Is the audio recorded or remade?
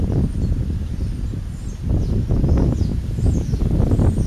recorded